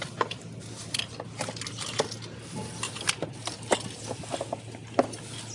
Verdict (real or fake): real